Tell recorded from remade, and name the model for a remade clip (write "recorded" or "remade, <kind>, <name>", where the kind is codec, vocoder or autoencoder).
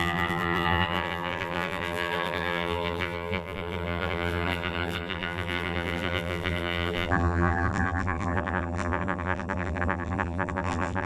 remade, vocoder, BigVGAN v2